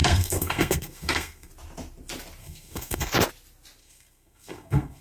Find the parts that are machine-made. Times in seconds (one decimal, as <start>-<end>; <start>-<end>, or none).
0.0-1.5; 2.4-3.1; 3.8-5.0